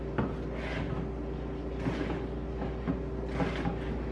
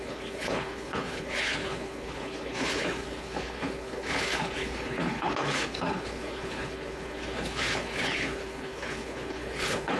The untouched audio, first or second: first